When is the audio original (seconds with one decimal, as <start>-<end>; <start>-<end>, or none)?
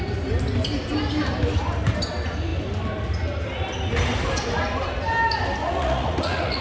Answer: 0.0-5.6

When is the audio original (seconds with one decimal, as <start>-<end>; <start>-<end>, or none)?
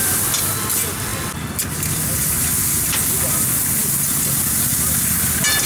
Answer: 0.0-5.7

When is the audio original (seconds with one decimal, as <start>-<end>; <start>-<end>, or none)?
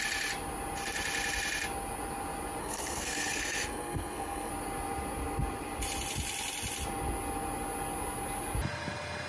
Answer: 0.0-2.6; 4.5-9.3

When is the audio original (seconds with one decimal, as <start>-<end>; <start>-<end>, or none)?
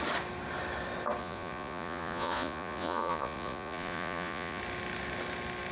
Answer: 0.0-1.2; 4.6-5.7